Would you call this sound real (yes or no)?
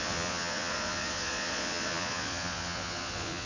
no